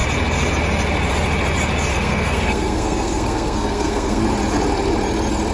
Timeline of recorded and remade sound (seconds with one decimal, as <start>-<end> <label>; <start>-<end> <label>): 0.0-1.9 recorded; 1.9-4.2 remade; 4.2-5.5 recorded